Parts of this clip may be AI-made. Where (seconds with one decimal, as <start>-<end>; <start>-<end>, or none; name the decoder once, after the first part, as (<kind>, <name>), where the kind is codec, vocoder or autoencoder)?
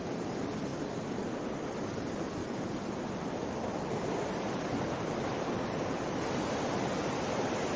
0.7-1.8 (vocoder, BigVGAN v2); 2.4-6.6